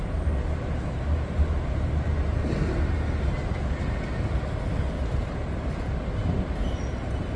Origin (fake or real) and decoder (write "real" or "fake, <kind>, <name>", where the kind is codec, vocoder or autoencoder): real